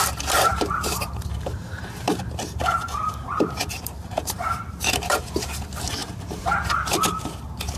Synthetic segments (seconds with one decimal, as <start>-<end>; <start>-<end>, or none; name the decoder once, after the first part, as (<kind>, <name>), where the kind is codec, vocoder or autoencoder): 0.5-5.2 (vocoder, BigVGAN v2); 6.0-6.7